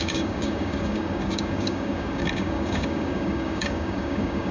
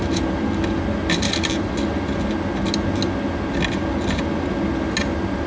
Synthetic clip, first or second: first